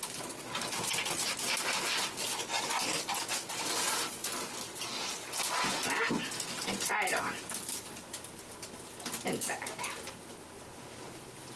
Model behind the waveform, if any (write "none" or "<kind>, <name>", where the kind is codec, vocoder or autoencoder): none